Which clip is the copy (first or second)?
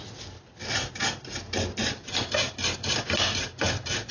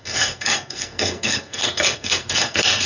second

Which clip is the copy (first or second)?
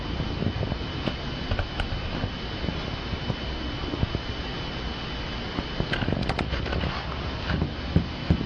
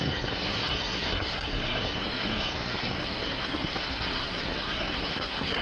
second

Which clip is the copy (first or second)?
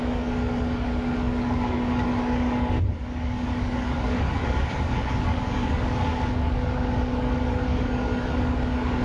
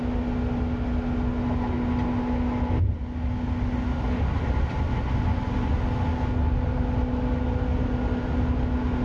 first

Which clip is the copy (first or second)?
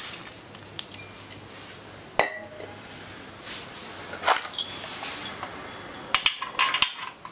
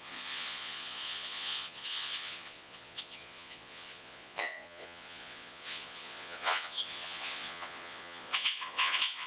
second